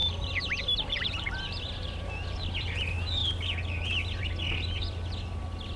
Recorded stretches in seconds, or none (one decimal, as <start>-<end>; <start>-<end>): 0.0-0.6; 3.2-4.2